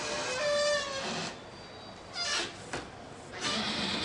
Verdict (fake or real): real